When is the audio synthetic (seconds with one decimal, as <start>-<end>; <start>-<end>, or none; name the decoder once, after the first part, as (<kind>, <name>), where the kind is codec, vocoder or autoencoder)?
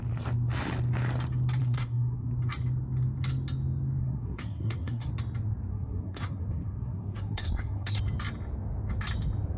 1.6-2.3 (codec, SNAC); 4.0-5.1; 5.7-8.0